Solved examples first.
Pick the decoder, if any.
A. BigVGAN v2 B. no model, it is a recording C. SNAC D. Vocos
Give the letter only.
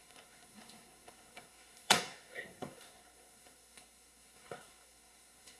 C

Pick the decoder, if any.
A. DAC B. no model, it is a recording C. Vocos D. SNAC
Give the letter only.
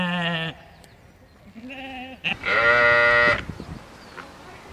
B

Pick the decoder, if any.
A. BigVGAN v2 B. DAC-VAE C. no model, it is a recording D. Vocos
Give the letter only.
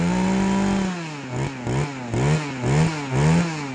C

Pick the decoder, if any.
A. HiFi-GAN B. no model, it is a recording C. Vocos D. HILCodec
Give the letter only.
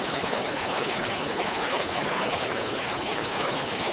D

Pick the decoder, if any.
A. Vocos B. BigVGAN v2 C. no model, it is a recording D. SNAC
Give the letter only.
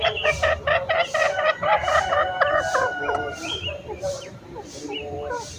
B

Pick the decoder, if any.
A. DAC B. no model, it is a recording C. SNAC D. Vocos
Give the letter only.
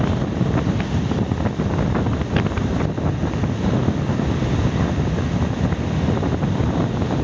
B